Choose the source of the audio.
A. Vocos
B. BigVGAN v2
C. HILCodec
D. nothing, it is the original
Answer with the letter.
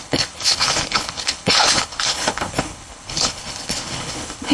C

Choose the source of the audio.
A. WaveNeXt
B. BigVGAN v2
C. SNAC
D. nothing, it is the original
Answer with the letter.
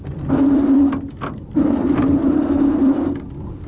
B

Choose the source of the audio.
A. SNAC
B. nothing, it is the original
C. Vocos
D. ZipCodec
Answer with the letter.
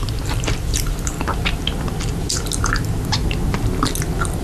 B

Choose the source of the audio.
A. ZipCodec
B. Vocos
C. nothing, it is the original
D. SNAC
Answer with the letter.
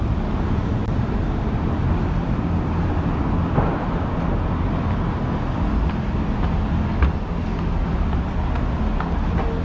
C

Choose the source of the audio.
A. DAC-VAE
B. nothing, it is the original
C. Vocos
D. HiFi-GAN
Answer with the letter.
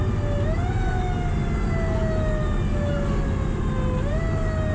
B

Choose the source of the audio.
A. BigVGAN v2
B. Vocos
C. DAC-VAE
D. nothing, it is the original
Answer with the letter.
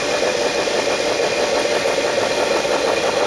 D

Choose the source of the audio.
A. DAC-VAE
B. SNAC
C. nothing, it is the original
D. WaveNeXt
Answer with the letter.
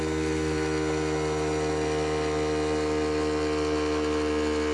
C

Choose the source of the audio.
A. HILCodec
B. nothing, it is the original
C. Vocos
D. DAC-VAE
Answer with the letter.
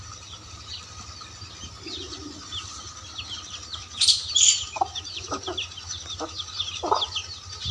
B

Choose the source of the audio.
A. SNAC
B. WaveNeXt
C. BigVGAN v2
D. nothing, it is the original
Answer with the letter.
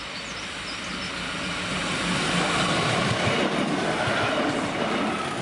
D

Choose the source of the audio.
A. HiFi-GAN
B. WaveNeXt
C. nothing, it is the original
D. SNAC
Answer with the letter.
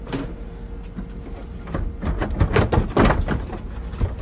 C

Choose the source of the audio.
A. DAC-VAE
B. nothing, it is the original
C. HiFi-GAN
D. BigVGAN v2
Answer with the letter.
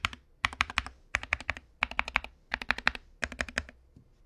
D